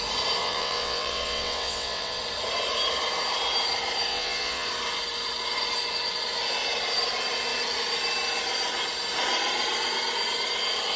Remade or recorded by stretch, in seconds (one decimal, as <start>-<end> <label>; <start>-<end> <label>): 0.0-0.4 recorded; 0.4-2.2 remade; 2.2-4.1 recorded; 4.1-4.7 remade; 4.7-11.0 recorded